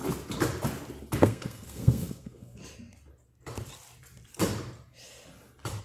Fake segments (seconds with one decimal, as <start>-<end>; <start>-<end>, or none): 1.2-2.6